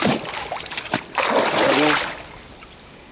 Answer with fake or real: real